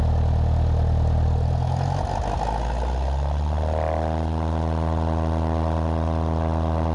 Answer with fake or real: real